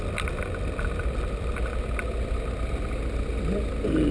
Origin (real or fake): real